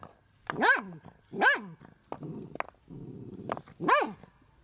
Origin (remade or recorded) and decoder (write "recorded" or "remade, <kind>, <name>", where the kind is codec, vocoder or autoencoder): recorded